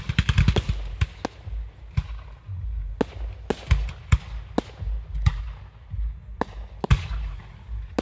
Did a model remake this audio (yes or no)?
no